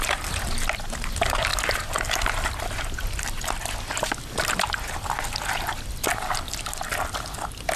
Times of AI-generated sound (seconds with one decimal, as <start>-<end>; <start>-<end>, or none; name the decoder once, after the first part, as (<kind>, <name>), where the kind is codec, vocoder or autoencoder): none